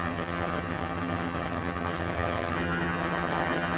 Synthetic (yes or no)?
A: yes